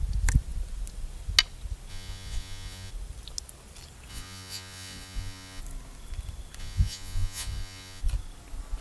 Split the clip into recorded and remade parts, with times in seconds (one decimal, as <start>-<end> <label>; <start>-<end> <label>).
0.0-1.9 recorded; 1.9-2.9 remade; 2.9-4.1 recorded; 4.1-5.6 remade; 5.6-6.6 recorded; 6.6-8.0 remade; 8.0-8.8 recorded

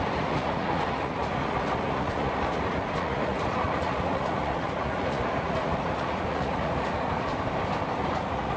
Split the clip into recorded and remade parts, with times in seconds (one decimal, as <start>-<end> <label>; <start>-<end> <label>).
0.0-7.3 remade; 7.3-8.0 recorded; 8.0-8.6 remade

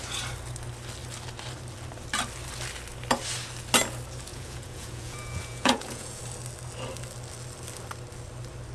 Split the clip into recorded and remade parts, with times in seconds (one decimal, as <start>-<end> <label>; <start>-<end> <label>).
0.0-4.3 recorded; 4.3-6.2 remade; 6.2-8.7 recorded

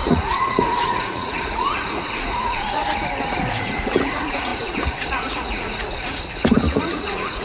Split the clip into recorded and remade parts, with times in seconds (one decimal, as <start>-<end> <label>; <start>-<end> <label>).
0.0-2.8 remade; 2.8-3.6 recorded; 3.6-7.4 remade

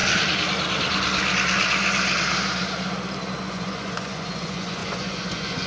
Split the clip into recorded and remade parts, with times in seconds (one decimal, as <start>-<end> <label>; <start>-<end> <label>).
0.0-3.4 recorded; 3.4-5.7 remade

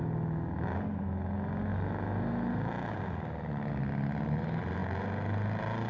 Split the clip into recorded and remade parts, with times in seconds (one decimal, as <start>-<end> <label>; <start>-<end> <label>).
0.0-5.9 recorded

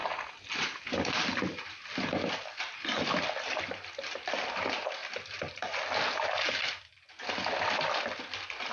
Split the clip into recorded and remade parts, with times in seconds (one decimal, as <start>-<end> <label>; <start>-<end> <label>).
0.0-8.7 recorded

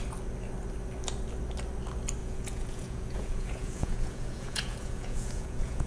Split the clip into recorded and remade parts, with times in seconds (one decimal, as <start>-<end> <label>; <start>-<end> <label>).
0.0-2.2 recorded; 2.2-5.9 remade